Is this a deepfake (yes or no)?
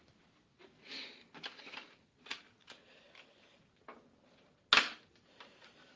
no